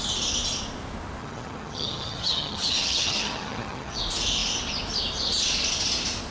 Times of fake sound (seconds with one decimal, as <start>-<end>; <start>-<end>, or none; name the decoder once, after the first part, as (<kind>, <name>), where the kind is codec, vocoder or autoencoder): 1.2-4.0 (vocoder, HiFi-GAN)